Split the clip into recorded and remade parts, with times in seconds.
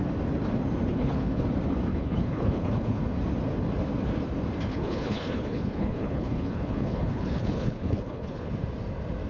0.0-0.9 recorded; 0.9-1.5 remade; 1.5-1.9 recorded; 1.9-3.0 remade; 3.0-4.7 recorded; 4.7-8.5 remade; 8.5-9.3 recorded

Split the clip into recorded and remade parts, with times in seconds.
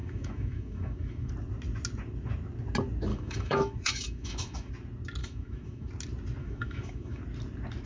0.0-1.3 remade; 1.3-3.1 recorded; 3.1-4.7 remade; 4.7-5.2 recorded; 5.2-5.9 remade; 5.9-6.4 recorded; 6.4-7.2 remade; 7.2-7.9 recorded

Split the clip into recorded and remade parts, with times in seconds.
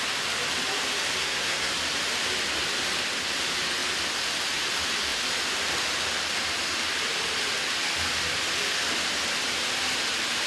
0.0-1.2 recorded; 1.2-1.7 remade; 1.7-10.5 recorded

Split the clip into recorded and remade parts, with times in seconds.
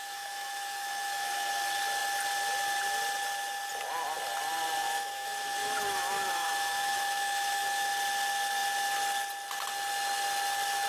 0.0-1.5 remade; 1.5-4.8 recorded; 4.8-7.9 remade; 7.9-10.9 recorded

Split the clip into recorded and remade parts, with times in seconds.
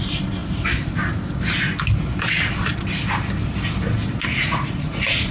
0.0-4.3 recorded; 4.3-5.3 remade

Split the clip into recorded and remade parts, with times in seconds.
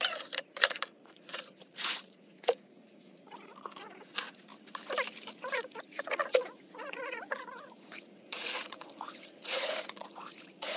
0.0-4.5 remade; 4.5-5.3 recorded; 5.3-10.8 remade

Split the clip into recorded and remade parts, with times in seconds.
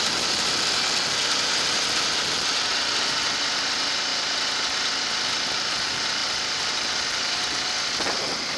0.0-8.6 recorded